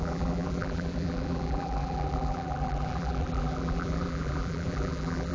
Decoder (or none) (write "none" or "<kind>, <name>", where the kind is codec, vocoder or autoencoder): vocoder, BigVGAN v2